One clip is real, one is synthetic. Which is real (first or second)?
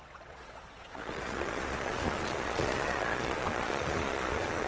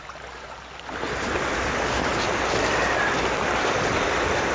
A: second